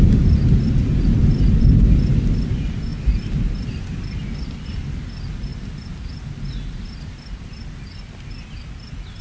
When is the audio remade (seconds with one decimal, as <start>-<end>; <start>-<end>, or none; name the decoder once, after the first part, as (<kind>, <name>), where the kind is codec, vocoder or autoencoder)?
none